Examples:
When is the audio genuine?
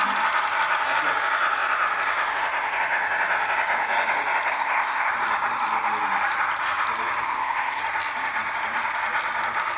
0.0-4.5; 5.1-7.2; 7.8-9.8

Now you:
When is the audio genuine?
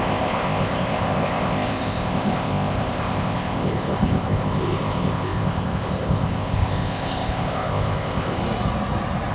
8.4-9.3